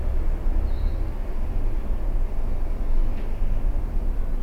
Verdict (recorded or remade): recorded